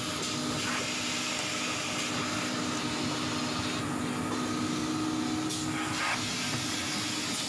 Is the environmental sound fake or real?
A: real